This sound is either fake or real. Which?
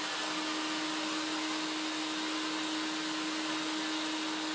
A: real